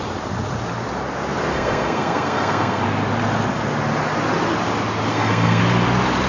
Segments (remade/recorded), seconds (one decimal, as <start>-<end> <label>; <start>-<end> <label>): 0.0-1.5 recorded; 1.5-2.8 remade; 2.8-5.1 recorded; 5.1-5.6 remade; 5.6-6.3 recorded